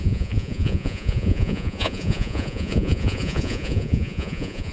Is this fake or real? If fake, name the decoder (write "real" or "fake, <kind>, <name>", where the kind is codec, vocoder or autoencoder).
fake, vocoder, Vocos